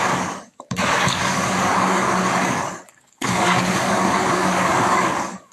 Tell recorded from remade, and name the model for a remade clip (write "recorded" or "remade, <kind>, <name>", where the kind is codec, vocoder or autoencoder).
remade, codec, DAC